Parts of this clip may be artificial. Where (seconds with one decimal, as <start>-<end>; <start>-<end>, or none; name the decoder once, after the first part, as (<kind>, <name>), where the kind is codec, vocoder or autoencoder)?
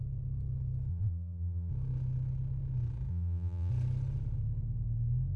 0.9-1.7 (vocoder, BigVGAN v2); 3.1-3.7